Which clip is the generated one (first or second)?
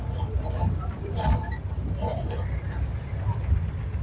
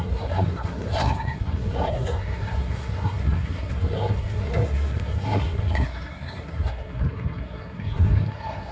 second